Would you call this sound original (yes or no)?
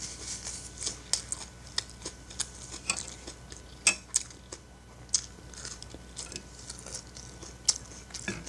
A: yes